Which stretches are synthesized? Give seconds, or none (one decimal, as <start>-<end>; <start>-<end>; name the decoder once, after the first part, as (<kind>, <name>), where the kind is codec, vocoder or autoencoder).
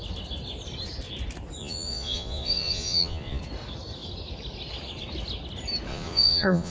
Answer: 1.6-3.4 (vocoder, Vocos); 5.9-6.7